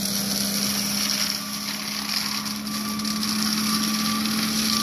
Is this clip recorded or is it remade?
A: recorded